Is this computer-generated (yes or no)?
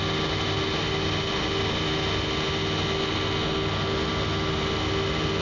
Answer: no